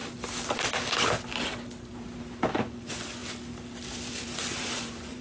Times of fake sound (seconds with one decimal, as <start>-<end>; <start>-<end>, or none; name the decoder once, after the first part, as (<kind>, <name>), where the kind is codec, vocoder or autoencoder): 2.5-3.2 (vocoder, Vocos); 4.1-5.2